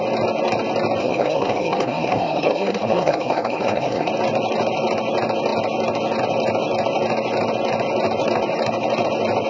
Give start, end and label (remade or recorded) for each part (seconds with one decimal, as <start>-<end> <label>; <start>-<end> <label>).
0.0-1.0 recorded; 1.0-4.1 remade; 4.1-9.5 recorded

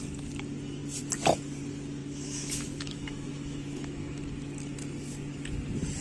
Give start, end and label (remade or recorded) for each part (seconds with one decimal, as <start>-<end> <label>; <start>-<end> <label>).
0.0-2.0 recorded; 2.0-4.2 remade; 4.2-6.0 recorded

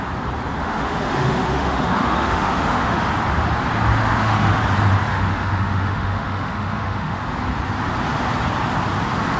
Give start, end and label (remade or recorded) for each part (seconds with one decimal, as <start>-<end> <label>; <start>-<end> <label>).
0.0-0.6 recorded; 0.6-3.1 remade; 3.1-4.0 recorded; 4.0-4.5 remade; 4.5-5.1 recorded; 5.1-7.2 remade; 7.2-9.4 recorded

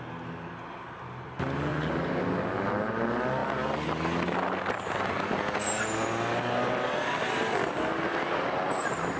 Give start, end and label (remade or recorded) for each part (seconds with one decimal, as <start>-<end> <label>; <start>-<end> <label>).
0.0-9.2 recorded

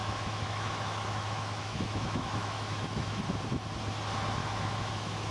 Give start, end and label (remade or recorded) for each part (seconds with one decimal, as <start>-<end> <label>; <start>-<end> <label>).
0.0-3.2 remade; 3.2-4.4 recorded; 4.4-5.3 remade

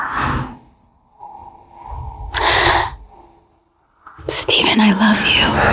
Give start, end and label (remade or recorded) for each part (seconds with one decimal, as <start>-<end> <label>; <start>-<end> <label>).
0.0-1.4 recorded; 1.4-4.8 remade; 4.8-5.7 recorded

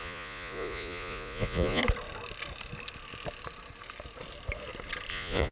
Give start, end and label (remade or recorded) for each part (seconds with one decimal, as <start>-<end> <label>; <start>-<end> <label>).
0.0-1.8 remade; 1.8-5.1 recorded; 5.1-5.5 remade